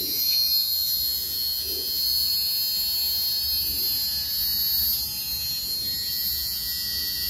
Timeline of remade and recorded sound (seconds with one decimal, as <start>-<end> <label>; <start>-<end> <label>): 0.0-2.3 remade; 2.3-6.1 recorded; 6.1-7.3 remade